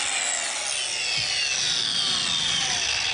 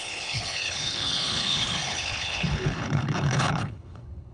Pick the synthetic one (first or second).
second